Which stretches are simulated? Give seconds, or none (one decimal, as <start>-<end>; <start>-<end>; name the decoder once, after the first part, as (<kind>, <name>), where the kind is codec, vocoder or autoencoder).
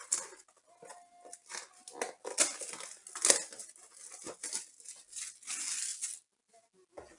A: none